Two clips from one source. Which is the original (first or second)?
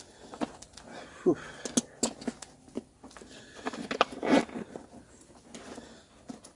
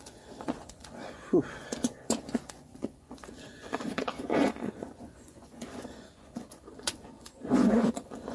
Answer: first